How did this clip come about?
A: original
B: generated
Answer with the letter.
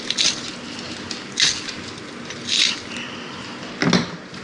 A